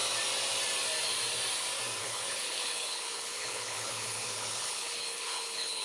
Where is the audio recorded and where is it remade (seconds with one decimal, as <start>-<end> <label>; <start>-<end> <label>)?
0.0-2.0 recorded; 2.0-5.8 remade